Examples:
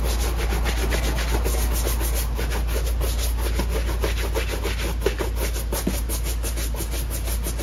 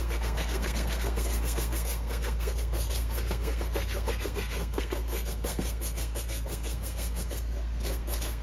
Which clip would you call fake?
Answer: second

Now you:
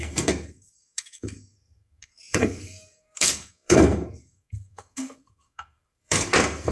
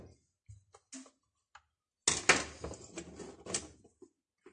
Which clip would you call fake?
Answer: first